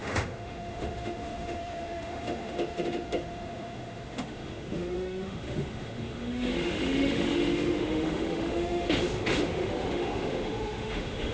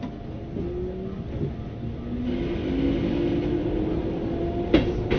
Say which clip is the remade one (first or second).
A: first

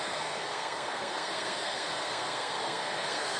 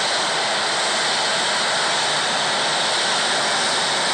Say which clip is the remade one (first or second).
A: first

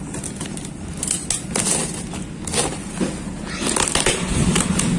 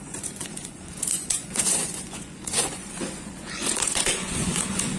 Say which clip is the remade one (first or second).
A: second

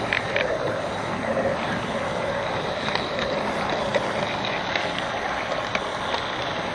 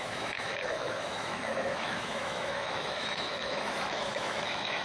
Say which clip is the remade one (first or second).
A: second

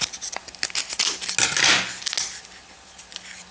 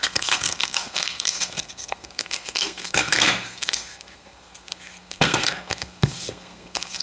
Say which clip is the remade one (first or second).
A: second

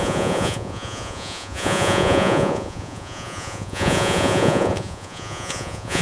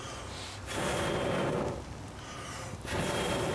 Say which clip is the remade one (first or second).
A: first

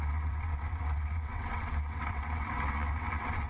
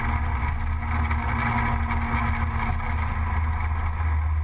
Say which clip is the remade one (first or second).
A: first